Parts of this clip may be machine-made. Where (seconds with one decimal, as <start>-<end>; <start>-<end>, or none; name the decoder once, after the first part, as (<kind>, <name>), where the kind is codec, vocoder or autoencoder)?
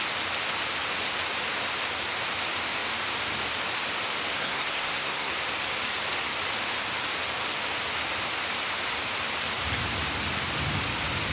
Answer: 4.3-5.3 (codec, SNAC)